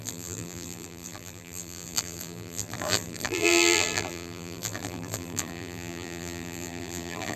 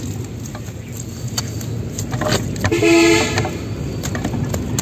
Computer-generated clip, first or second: first